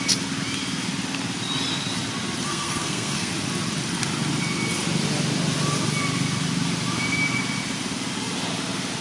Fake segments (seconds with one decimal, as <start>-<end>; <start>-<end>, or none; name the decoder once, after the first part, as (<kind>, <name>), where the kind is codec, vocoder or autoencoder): 2.5-3.3 (codec, SNAC)